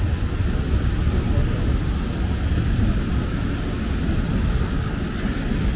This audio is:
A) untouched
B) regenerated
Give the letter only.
A